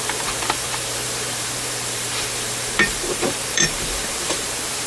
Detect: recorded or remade remade